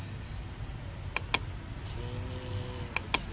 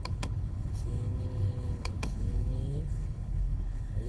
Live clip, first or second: first